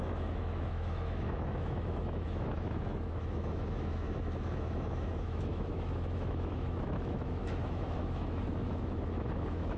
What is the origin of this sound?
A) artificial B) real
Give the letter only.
A